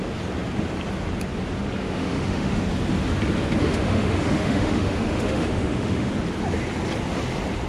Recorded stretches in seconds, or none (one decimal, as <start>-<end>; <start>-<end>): 0.0-1.8; 2.6-3.6; 6.1-7.7